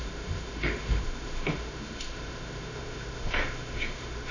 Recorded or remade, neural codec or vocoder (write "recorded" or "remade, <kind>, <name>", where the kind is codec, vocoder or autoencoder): remade, autoencoder, DAC-VAE